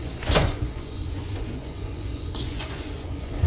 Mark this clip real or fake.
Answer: fake